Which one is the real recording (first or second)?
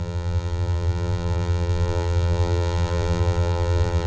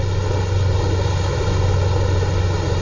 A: second